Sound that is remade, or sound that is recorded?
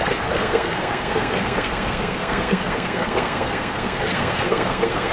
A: remade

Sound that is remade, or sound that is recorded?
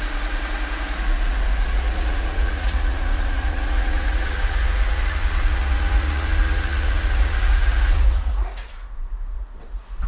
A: remade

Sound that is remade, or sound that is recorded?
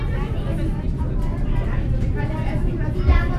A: recorded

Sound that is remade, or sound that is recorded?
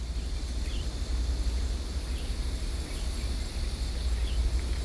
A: recorded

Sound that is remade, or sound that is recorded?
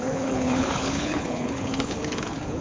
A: remade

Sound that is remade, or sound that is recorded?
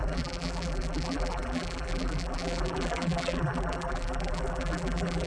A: remade